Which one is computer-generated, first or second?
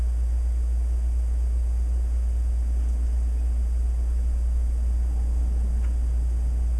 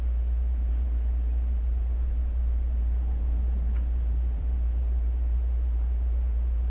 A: second